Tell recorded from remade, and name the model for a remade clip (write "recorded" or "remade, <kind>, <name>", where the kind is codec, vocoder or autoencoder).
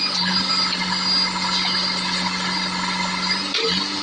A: recorded